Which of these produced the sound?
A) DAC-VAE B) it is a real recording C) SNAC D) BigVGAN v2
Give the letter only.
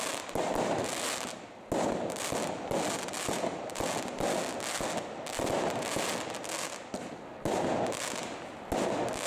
B